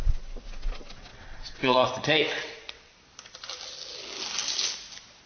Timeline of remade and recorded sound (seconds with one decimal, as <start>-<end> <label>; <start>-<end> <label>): 0.0-1.1 recorded; 1.1-2.9 remade; 2.9-5.3 recorded